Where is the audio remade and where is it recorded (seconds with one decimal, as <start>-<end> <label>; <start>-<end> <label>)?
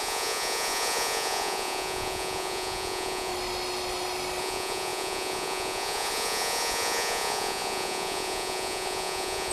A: 0.0-3.3 remade; 3.3-4.4 recorded; 4.4-9.5 remade